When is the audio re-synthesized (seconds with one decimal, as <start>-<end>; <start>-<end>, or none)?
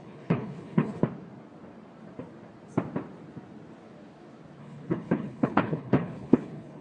0.0-1.0; 4.6-6.8